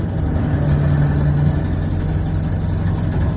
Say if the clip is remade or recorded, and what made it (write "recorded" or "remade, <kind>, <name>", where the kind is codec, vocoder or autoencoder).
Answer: recorded